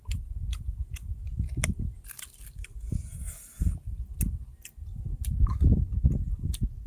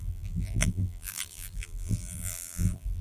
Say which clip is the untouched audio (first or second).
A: first